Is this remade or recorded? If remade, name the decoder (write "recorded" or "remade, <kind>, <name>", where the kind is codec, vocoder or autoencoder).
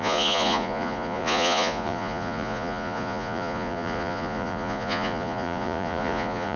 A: remade, vocoder, Vocos